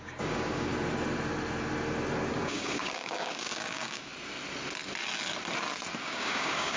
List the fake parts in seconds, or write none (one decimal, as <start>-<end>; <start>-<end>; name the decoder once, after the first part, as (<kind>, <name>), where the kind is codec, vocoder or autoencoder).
0.0-0.7 (codec, DAC); 2.3-4.1; 6.0-6.8